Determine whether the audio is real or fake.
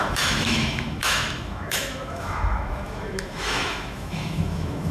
fake